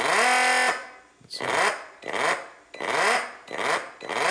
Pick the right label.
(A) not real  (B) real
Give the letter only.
B